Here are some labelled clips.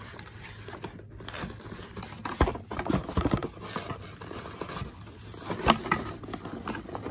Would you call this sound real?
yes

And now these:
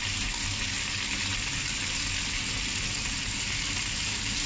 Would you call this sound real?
yes